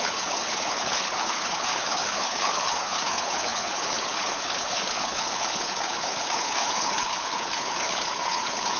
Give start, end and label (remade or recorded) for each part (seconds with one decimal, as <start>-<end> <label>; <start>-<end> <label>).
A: 0.0-8.8 remade